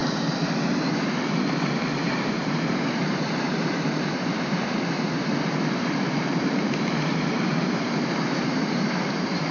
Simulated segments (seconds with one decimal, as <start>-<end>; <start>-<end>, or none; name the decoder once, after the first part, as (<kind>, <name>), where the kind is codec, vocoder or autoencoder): 0.9-9.5 (vocoder, BigVGAN v2)